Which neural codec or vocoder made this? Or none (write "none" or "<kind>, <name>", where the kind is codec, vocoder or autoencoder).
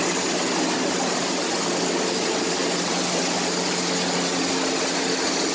none